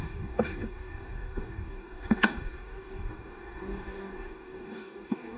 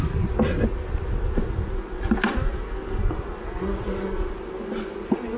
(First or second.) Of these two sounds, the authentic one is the second